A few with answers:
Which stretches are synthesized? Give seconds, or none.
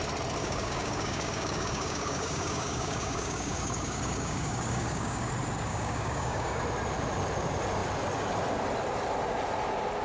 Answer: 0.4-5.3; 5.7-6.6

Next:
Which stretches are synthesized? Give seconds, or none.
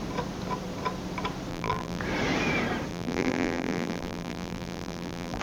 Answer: 1.5-2.0; 2.9-5.4